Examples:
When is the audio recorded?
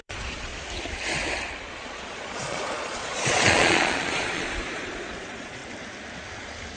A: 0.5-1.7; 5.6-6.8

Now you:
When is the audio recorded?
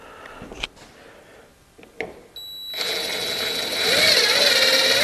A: 0.0-5.0